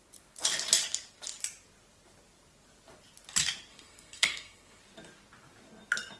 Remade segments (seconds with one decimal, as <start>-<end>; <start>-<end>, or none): 3.7-4.8